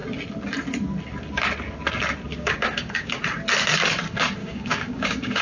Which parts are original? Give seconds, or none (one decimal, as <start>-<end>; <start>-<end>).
0.0-2.3; 3.2-4.4